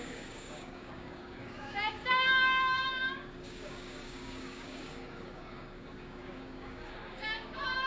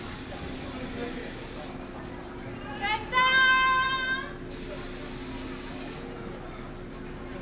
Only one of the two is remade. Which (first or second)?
first